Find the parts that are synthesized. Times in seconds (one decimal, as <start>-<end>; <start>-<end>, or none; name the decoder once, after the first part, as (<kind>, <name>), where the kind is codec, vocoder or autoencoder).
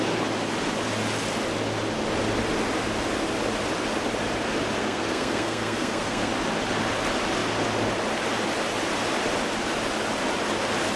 4.8-6.3 (codec, SNAC)